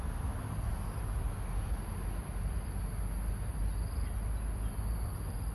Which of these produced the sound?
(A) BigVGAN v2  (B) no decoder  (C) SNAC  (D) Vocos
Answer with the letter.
B